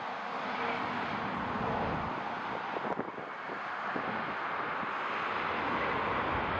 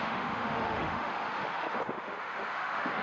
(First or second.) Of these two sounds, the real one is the first